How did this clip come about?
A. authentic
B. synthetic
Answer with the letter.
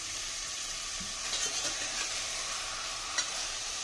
B